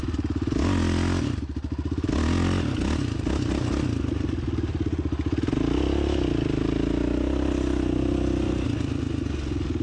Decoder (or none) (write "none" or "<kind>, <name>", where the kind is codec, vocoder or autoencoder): none